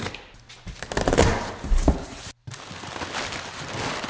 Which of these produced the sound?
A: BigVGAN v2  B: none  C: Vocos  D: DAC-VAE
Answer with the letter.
B